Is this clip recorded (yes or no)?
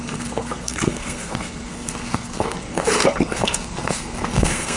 no